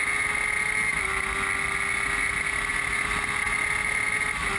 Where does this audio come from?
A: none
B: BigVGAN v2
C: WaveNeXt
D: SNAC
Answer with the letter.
A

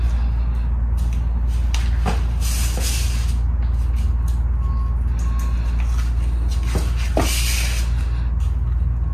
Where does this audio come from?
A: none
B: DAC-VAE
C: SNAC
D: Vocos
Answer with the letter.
A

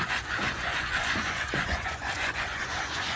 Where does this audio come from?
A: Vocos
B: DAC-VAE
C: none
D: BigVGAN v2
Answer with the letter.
A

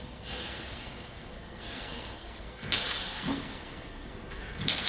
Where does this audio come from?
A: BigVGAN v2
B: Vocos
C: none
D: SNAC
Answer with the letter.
D